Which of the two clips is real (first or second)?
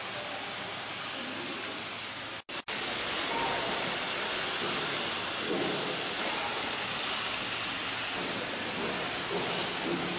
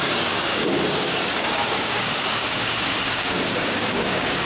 first